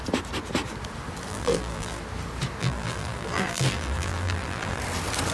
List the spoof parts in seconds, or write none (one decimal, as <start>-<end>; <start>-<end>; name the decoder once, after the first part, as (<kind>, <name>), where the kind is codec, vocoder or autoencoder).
1.3-2.0 (vocoder, BigVGAN v2); 2.6-4.8